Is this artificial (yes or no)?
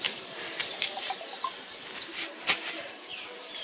yes